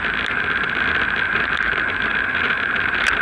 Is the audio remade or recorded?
recorded